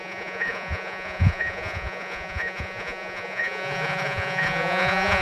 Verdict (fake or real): fake